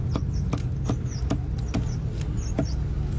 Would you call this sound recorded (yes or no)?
yes